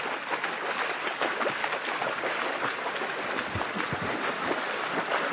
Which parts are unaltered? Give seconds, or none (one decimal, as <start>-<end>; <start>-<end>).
0.0-5.3